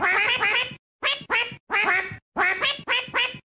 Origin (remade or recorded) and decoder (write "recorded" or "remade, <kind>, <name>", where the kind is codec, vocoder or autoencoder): recorded